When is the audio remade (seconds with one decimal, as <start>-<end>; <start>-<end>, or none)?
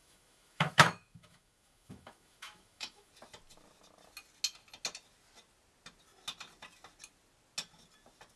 0.0-3.1